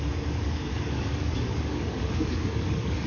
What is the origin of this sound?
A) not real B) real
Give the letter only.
A